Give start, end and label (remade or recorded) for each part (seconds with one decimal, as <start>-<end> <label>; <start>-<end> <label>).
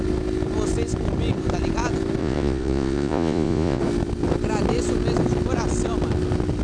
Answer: 0.0-2.2 recorded; 2.2-3.8 remade; 3.8-6.6 recorded